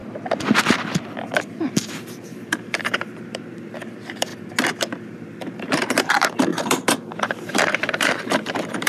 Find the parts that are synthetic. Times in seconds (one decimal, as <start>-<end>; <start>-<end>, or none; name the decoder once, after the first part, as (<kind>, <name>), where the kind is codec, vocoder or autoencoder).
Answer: 0.6-4.3 (vocoder, BigVGAN v2); 4.8-8.9